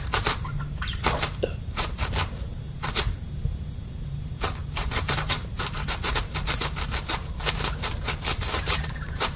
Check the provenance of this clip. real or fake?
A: fake